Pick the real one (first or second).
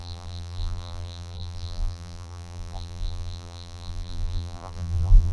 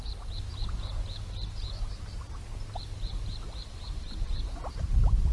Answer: second